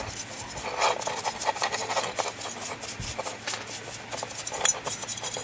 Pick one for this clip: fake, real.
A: real